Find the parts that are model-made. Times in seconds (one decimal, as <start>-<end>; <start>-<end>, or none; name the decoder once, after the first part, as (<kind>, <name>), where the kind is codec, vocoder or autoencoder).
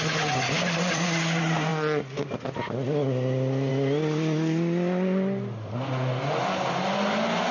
none